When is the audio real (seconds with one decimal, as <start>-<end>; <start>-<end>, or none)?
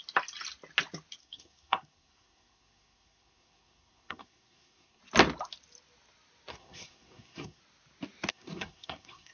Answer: 0.0-1.2; 5.0-6.5; 7.6-8.3